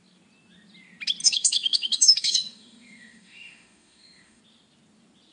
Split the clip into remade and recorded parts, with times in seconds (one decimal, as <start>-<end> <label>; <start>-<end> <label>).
0.0-1.2 recorded; 1.2-4.4 remade; 4.4-5.3 recorded